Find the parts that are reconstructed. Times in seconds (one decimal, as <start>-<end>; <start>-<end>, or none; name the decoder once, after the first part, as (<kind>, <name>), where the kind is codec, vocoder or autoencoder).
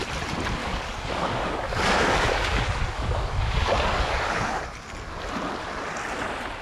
0.6-4.6 (codec, DAC)